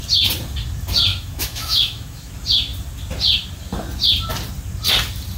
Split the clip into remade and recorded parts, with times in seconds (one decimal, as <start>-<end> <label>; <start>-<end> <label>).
0.0-1.1 recorded; 1.1-2.3 remade; 2.3-5.4 recorded